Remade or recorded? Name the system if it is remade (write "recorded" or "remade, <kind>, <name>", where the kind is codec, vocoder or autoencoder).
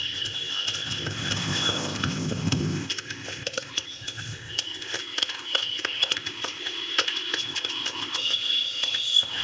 remade, codec, ZipCodec